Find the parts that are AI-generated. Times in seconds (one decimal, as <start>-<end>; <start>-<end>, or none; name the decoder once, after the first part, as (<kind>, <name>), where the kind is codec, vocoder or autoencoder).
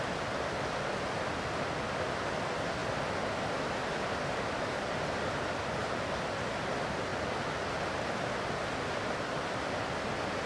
none